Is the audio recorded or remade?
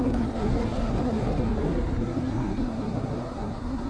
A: remade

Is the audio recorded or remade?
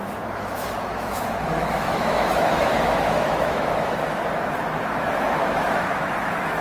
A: remade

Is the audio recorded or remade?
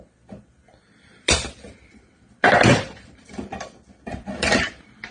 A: remade